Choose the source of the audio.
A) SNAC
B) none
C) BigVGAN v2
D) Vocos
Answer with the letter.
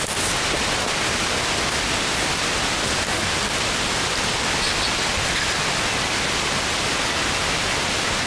B